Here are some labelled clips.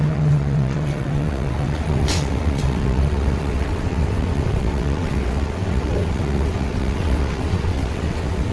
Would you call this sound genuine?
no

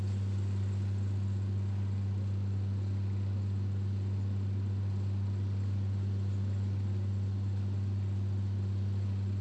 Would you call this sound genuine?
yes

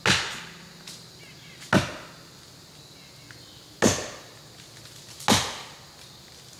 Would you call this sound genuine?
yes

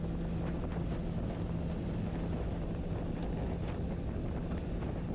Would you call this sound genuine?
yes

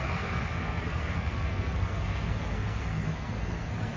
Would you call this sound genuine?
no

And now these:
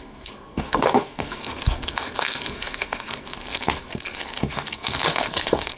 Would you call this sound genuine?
no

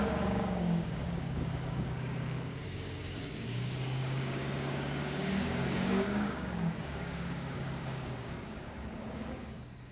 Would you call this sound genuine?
no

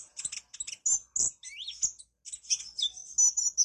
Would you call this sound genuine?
yes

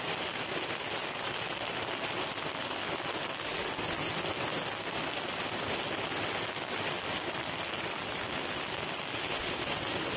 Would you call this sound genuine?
yes